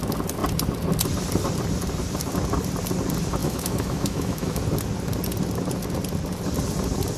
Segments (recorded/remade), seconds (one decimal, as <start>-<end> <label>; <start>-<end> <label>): 0.0-3.4 recorded; 3.4-4.6 remade; 4.6-7.2 recorded